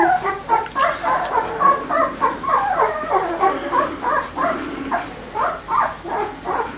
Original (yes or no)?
no